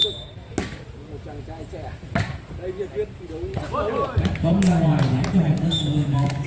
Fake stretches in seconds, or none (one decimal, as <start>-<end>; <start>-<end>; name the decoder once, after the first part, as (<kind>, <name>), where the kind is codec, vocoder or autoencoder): 5.6-6.5 (autoencoder, DAC-VAE)